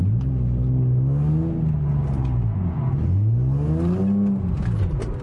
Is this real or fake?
real